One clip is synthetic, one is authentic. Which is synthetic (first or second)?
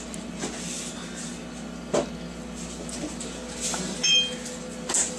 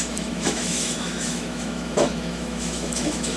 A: second